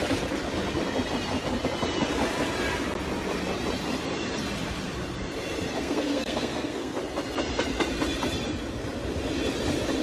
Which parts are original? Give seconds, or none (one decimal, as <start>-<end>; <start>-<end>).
0.0-5.8; 7.0-10.0